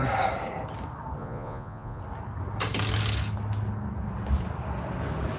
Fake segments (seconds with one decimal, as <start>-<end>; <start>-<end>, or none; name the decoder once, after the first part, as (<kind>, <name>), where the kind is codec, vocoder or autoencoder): 1.2-2.0 (vocoder, Vocos)